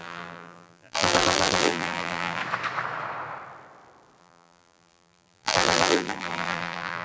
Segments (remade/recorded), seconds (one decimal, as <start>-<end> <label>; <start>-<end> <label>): 0.0-2.4 remade; 2.4-4.2 recorded; 4.2-7.0 remade